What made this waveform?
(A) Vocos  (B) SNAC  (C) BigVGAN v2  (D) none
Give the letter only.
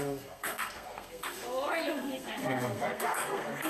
B